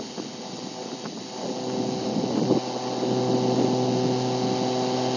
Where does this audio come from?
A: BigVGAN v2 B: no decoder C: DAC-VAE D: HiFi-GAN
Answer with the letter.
B